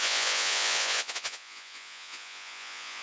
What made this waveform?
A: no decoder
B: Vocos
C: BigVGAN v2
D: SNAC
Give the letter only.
B